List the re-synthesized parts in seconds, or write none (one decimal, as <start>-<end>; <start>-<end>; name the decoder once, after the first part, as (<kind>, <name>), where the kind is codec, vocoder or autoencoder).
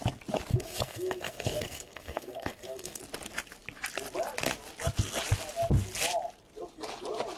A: 0.5-3.0 (codec, SNAC)